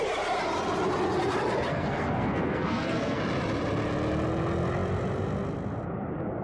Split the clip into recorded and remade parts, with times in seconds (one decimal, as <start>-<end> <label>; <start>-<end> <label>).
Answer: 0.0-1.7 recorded; 1.7-3.2 remade; 3.2-6.4 recorded